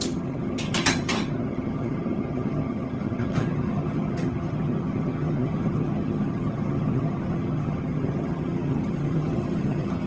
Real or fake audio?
fake